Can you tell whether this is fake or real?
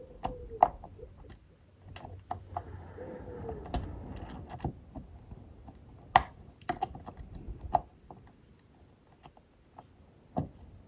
real